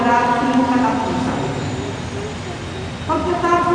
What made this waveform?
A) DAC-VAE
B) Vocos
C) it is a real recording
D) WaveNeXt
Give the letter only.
C